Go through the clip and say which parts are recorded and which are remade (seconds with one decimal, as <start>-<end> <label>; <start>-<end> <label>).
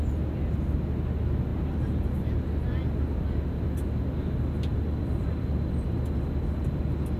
0.0-4.7 recorded; 4.7-6.0 remade; 6.0-7.2 recorded